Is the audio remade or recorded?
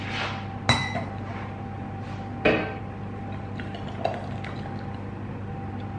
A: recorded